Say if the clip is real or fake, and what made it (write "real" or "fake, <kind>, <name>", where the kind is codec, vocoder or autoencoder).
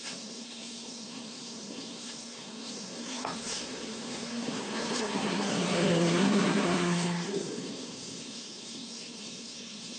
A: fake, codec, SNAC